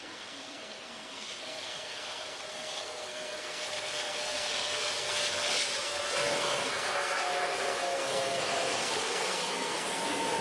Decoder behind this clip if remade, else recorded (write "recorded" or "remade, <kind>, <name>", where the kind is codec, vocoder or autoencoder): remade, codec, SNAC